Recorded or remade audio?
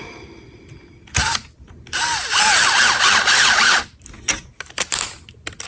recorded